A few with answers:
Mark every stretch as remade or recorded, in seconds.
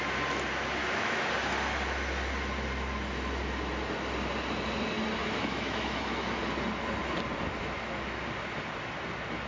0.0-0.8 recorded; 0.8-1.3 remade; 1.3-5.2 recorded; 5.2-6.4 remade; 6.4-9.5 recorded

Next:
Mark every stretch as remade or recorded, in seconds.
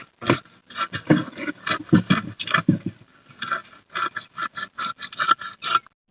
0.0-6.1 recorded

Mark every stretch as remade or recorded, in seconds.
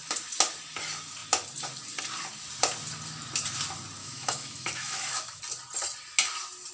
0.0-4.0 recorded; 4.0-5.4 remade; 5.4-6.7 recorded